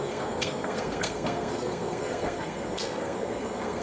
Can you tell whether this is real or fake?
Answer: fake